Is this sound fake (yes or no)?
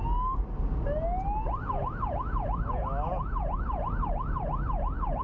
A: no